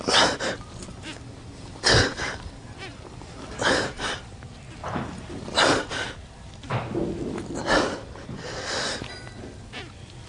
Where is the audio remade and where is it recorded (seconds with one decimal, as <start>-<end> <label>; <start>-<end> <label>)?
0.0-0.9 recorded; 0.9-4.3 remade; 4.3-4.8 recorded; 4.8-5.9 remade; 5.9-10.3 recorded